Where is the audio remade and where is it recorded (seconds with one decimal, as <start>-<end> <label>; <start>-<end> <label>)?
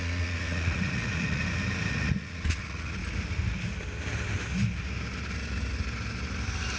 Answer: 0.0-1.4 remade; 1.4-1.9 recorded; 1.9-3.0 remade; 3.0-6.8 recorded